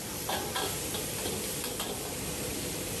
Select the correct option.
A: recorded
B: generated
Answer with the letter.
B